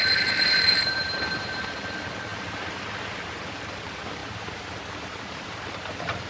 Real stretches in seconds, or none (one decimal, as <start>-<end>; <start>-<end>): 4.2-4.8